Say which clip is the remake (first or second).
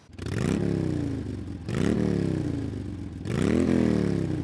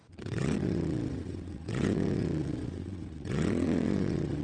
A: second